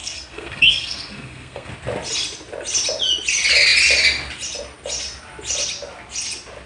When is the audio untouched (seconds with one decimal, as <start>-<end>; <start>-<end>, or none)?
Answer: 1.7-6.7